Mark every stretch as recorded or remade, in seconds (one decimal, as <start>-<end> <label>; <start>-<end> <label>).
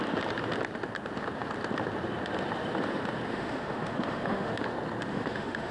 0.0-3.3 recorded; 3.3-4.5 remade; 4.5-5.1 recorded; 5.1-5.7 remade